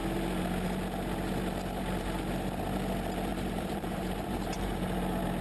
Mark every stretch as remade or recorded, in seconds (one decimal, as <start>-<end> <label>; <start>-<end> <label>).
0.0-3.3 recorded; 3.3-5.0 remade; 5.0-5.4 recorded